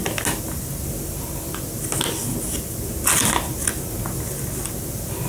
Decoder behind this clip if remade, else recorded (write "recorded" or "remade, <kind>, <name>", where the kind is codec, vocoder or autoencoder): recorded